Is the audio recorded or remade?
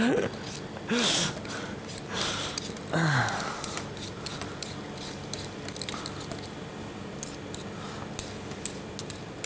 recorded